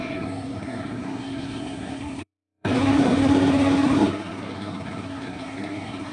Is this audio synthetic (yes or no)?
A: yes